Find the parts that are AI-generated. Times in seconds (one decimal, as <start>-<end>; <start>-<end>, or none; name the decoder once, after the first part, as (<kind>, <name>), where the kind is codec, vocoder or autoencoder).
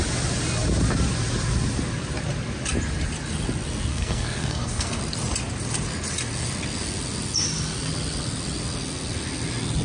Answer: 3.9-5.0 (codec, SNAC)